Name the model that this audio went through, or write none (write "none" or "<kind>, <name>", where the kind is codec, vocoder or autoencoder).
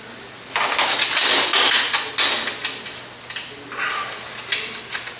none